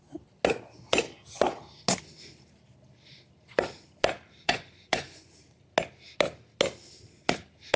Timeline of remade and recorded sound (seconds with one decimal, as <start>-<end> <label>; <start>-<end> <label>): 0.0-4.4 recorded; 4.4-5.3 remade; 5.3-7.8 recorded